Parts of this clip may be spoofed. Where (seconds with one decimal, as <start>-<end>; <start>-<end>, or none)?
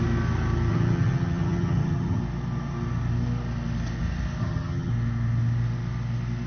0.7-2.2; 4.4-4.9